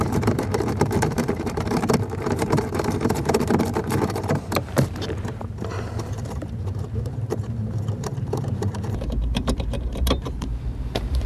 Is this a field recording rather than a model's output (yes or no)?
no